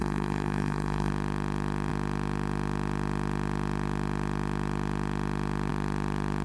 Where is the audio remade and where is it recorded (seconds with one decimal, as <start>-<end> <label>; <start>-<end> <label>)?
0.0-1.1 remade; 1.1-6.4 recorded